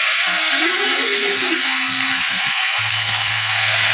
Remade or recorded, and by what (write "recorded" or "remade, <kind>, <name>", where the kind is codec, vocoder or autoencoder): remade, codec, SNAC